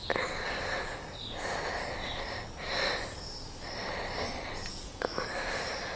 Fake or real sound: real